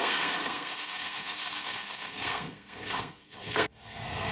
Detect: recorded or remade remade